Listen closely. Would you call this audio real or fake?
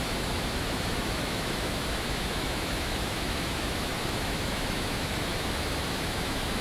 fake